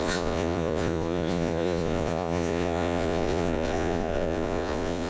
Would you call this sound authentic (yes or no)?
no